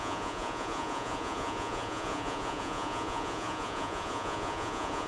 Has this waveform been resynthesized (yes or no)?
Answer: yes